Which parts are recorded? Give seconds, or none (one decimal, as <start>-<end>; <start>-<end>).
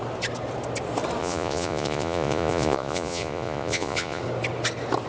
0.0-1.2; 4.2-5.1